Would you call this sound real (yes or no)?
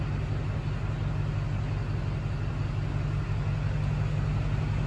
yes